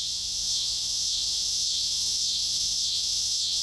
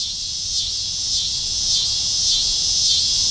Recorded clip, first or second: second